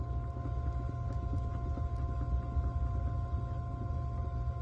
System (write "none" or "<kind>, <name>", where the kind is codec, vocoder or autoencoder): none